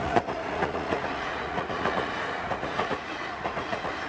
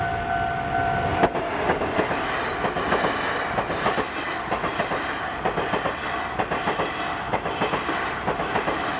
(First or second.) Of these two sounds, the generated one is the first